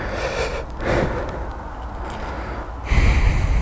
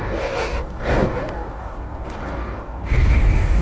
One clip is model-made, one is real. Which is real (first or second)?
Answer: first